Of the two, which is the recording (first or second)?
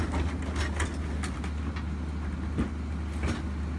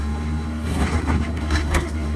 first